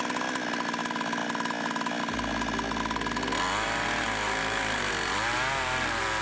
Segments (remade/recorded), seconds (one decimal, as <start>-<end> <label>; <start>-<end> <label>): 0.0-6.2 recorded